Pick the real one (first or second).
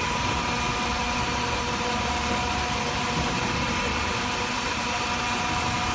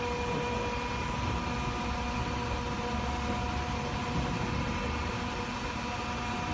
second